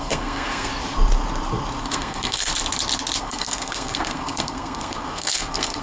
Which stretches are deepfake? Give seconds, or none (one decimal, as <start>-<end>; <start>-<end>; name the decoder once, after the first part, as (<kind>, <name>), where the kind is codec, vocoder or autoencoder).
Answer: 0.0-0.7 (codec, SNAC); 1.8-2.5; 3.2-5.8